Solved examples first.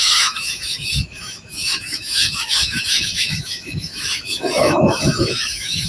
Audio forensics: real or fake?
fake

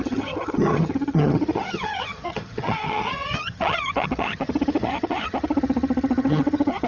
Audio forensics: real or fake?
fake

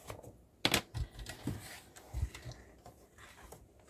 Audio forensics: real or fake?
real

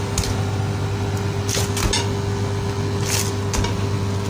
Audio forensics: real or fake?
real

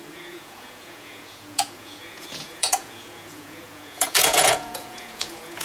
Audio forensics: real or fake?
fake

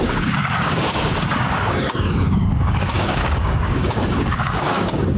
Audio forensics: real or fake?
fake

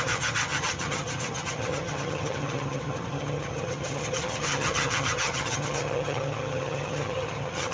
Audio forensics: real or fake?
fake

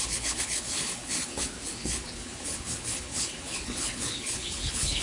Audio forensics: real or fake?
fake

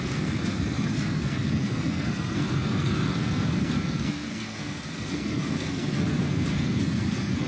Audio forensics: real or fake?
fake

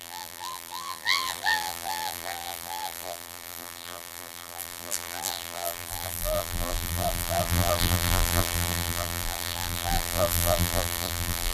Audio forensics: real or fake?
fake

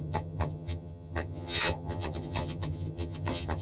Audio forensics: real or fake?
fake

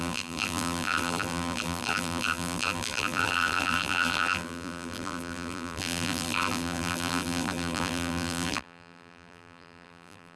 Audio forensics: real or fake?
fake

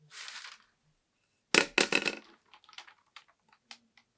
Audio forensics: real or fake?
real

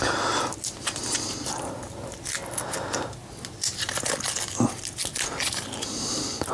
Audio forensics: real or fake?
real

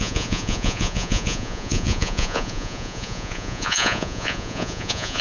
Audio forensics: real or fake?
fake